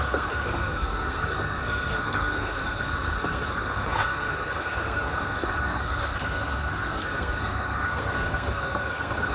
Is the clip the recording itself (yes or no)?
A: no